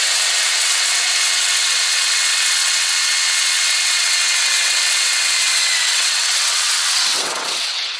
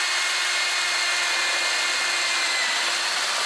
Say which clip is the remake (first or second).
first